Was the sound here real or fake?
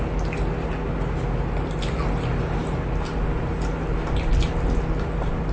real